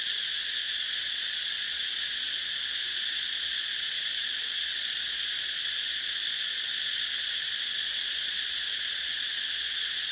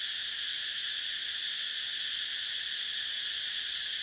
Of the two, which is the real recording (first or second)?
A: second